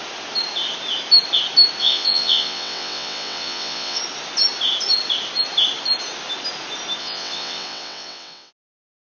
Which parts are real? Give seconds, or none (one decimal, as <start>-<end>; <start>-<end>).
0.0-1.8; 4.0-7.0; 8.5-9.2